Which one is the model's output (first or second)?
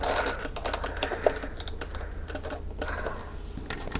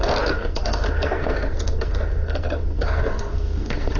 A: second